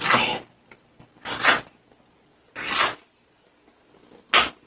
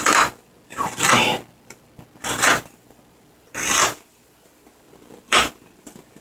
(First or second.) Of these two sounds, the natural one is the first